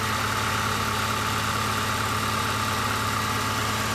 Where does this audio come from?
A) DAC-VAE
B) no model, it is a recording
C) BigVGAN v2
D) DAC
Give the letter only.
B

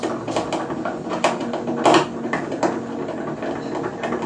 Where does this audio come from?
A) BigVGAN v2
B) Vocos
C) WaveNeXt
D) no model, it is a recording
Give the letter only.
D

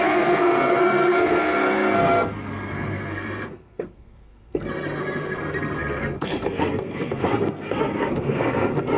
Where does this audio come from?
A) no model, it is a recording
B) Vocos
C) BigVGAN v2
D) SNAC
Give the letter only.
D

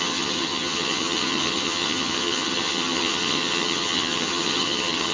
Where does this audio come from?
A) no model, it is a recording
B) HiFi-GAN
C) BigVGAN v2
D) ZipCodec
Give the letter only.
B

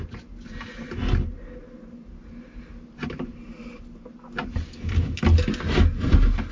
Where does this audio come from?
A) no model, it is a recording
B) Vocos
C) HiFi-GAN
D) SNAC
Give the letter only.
A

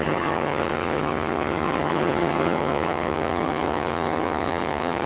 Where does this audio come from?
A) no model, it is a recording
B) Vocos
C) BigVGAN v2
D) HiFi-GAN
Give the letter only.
D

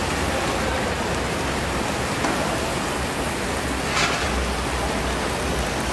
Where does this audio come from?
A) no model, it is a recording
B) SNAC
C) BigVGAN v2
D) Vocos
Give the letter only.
A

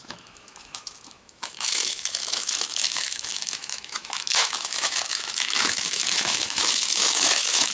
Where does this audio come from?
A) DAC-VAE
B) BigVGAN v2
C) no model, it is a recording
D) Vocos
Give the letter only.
A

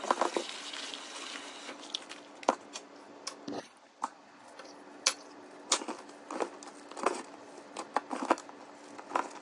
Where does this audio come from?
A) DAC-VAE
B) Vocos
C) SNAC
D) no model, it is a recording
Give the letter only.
D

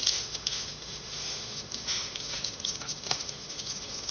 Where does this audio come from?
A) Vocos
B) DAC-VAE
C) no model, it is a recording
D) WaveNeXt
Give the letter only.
B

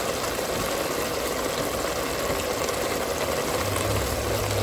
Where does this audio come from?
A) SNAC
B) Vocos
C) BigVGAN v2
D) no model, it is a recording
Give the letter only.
D